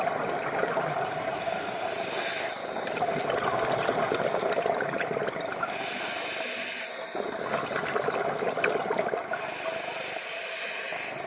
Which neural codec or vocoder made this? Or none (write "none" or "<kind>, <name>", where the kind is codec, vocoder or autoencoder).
none